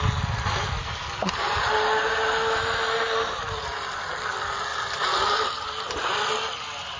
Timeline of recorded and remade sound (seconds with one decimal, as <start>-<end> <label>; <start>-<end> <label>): 0.0-0.8 recorded; 0.8-1.3 remade; 1.3-7.0 recorded